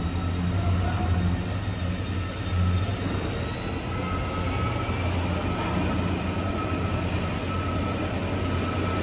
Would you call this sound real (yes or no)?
yes